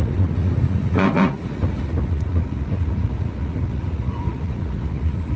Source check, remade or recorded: remade